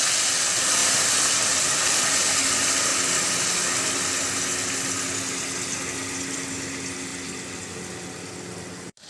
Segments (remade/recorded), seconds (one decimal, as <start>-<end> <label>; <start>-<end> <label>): 0.0-9.1 recorded